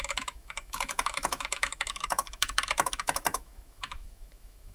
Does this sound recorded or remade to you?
remade